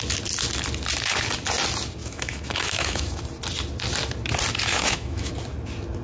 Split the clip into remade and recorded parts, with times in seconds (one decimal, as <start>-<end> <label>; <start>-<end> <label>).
0.0-2.0 recorded; 2.0-3.2 remade; 3.2-4.7 recorded; 4.7-5.3 remade; 5.3-6.0 recorded